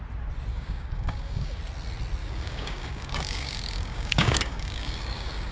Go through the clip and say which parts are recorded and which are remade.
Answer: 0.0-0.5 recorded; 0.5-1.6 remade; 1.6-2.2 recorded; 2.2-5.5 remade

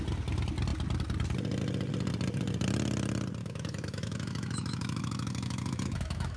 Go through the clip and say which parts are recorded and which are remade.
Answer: 0.0-3.4 recorded; 3.4-6.4 remade

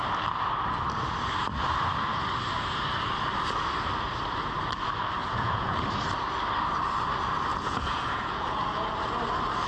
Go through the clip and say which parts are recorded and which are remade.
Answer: 0.0-5.2 recorded; 5.2-5.9 remade; 5.9-7.5 recorded; 7.5-8.9 remade; 8.9-9.7 recorded

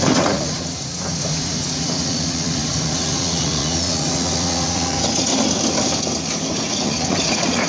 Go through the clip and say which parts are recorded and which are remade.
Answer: 0.0-5.3 remade; 5.3-6.7 recorded; 6.7-7.7 remade